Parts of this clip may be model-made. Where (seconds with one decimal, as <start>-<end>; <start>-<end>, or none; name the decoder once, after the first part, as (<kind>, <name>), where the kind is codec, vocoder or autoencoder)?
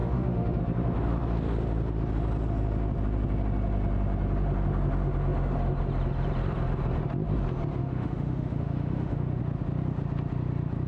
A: 0.0-0.6 (autoencoder, DAC-VAE); 7.8-9.4